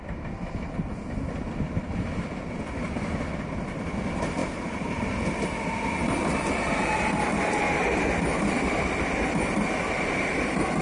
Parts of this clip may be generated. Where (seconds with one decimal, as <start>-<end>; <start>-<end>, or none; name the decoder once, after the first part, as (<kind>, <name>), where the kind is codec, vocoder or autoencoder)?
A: 4.4-5.4 (vocoder, BigVGAN v2)